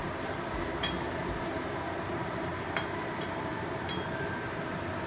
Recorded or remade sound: remade